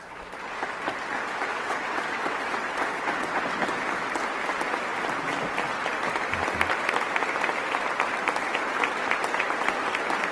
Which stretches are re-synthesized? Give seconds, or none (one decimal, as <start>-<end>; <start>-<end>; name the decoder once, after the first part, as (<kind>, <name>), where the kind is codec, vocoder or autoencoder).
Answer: 1.5-3.6 (vocoder, WaveNeXt)